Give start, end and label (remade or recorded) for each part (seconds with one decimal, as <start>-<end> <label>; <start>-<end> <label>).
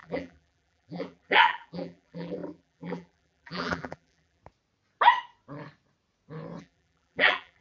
0.0-4.4 remade; 4.4-6.6 recorded; 6.6-7.6 remade